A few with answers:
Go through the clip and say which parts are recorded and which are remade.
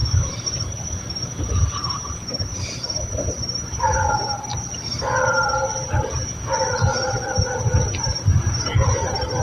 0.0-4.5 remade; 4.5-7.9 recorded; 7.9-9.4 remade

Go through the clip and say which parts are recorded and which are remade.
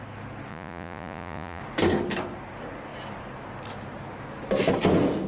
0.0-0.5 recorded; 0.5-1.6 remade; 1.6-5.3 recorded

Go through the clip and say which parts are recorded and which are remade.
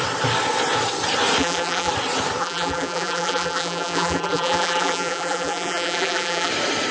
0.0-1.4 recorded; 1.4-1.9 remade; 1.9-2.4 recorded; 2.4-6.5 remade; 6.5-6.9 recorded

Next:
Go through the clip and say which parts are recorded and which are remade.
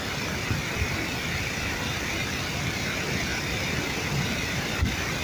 0.0-5.2 recorded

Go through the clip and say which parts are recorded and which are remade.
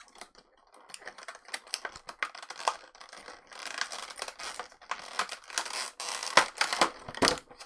0.0-7.7 recorded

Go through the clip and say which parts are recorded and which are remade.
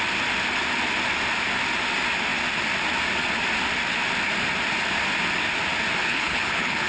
0.0-6.0 recorded; 6.0-6.9 remade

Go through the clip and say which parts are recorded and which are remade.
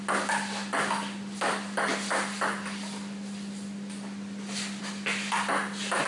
0.0-6.1 recorded